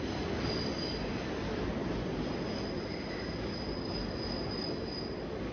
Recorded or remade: recorded